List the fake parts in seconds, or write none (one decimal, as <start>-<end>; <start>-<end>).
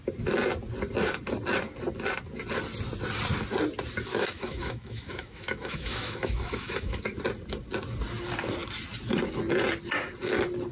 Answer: 4.1-7.0